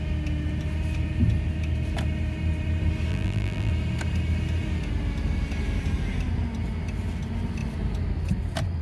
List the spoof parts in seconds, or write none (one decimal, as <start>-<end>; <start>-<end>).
3.1-3.7

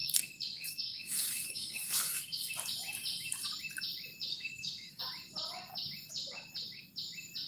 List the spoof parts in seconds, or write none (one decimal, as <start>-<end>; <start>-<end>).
0.0-2.5; 4.3-5.0

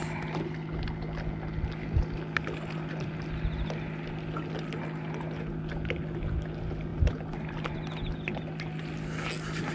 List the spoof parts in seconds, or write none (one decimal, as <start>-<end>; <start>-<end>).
none

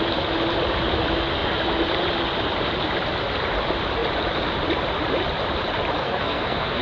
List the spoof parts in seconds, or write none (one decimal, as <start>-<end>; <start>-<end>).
6.0-6.8

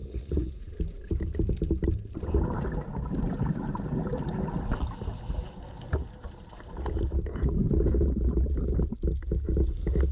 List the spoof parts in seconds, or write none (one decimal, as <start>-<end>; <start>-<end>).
0.0-0.7

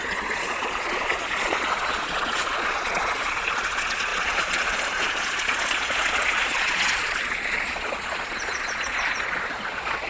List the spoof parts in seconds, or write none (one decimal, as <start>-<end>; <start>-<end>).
0.0-10.1